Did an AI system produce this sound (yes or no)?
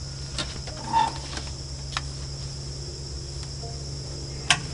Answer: no